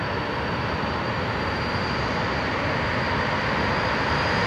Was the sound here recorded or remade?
recorded